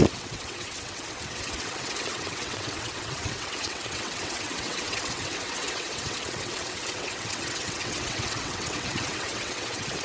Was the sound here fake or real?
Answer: fake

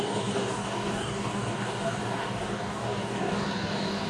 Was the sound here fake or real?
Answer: fake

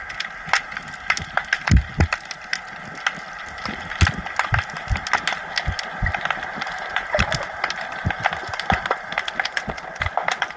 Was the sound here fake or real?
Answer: real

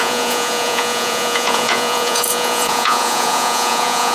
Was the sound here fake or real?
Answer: fake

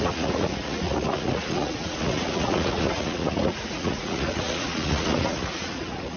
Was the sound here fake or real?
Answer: fake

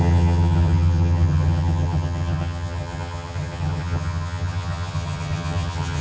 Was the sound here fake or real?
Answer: fake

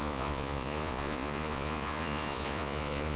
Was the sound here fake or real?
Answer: fake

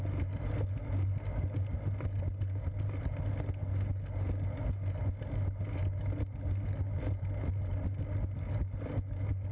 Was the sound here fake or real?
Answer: real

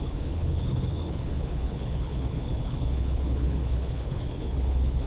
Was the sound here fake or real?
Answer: fake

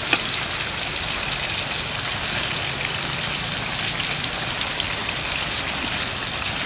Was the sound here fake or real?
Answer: real